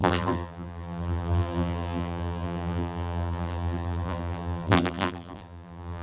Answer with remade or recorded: remade